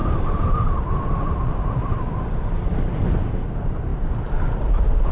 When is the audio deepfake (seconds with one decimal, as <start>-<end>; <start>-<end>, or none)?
0.0-5.1